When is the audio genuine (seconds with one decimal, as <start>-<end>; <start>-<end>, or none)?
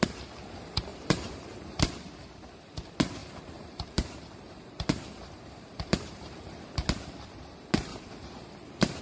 0.0-0.9; 1.9-3.2; 6.6-7.9